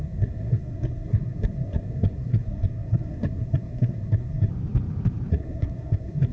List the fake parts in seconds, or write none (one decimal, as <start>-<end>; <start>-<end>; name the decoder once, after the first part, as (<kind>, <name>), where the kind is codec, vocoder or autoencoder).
0.0-4.5 (codec, SNAC); 5.3-6.3